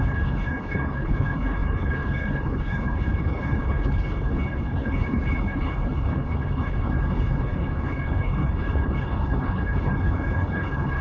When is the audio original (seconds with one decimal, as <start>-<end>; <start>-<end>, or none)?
none